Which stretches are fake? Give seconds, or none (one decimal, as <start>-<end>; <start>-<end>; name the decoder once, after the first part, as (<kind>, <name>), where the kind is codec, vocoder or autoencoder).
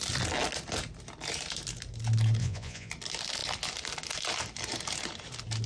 2.4-2.9 (vocoder, Vocos)